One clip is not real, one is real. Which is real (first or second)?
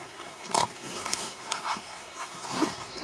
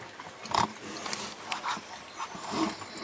second